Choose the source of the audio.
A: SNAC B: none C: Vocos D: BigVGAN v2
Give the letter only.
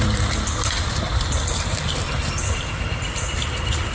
D